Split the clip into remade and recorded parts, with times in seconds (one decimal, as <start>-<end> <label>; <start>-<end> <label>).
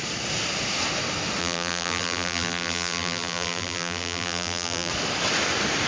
0.0-1.4 recorded; 1.4-4.9 remade; 4.9-5.9 recorded